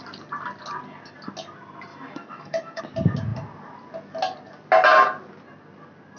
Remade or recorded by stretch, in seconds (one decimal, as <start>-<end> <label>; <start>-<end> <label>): 0.0-1.9 recorded; 1.9-2.8 remade; 2.8-6.2 recorded